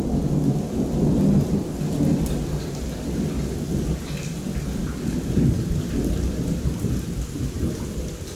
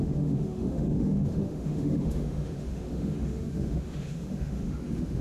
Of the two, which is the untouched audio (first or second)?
first